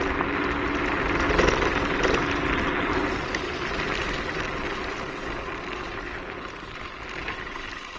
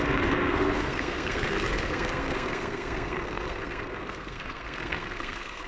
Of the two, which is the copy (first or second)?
second